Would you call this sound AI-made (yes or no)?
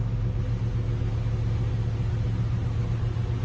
no